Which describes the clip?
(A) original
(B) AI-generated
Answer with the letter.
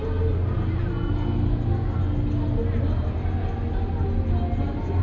A